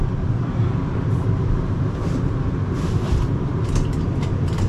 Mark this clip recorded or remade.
remade